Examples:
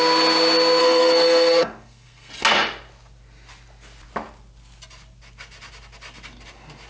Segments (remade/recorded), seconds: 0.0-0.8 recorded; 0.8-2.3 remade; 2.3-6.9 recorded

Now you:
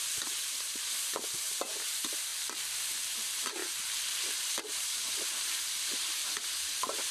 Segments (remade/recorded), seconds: 0.0-7.1 remade

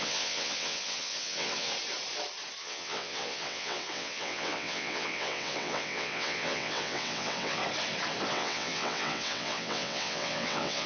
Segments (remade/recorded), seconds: 0.0-1.7 remade; 1.7-2.6 recorded; 2.6-7.6 remade; 7.6-8.3 recorded; 8.3-10.9 remade

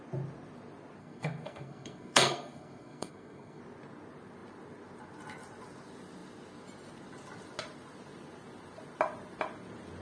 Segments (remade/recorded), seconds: 0.0-1.0 recorded; 1.0-3.6 remade; 3.6-10.0 recorded